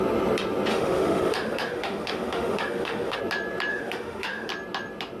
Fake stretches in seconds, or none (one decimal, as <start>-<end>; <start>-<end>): 0.7-3.2; 3.7-4.5